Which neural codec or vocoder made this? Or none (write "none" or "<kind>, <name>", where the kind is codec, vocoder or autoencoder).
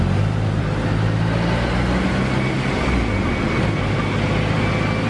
none